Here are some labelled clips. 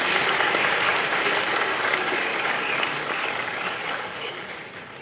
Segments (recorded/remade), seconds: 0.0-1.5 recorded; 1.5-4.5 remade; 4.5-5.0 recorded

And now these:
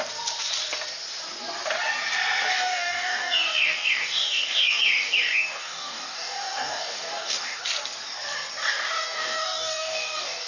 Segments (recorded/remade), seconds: 0.0-2.5 recorded; 2.5-7.6 remade; 7.6-8.6 recorded; 8.6-10.5 remade

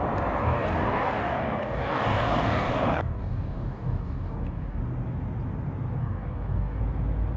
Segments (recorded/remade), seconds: 0.0-0.4 recorded; 0.4-4.8 remade; 4.8-6.0 recorded; 6.0-6.8 remade; 6.8-7.4 recorded

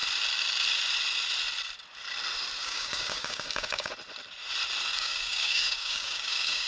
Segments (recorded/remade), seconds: 0.0-2.6 recorded; 2.6-3.9 remade; 3.9-4.9 recorded; 4.9-6.7 remade